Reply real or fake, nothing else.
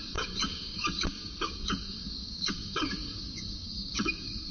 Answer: fake